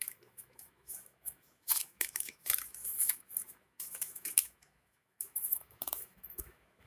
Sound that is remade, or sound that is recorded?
remade